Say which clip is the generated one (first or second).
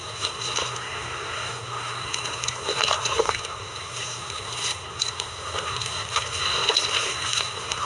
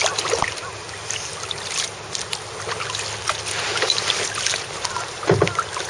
first